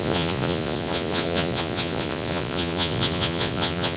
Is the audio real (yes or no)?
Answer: no